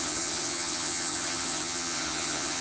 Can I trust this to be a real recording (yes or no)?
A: no